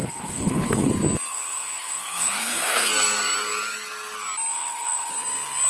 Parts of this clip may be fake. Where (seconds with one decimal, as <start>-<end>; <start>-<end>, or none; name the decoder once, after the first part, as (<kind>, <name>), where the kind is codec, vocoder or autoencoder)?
0.0-0.9 (codec, HILCodec); 1.3-2.9; 4.5-5.1